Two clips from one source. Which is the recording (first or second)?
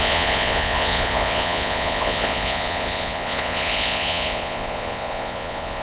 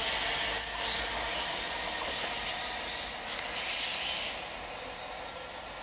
second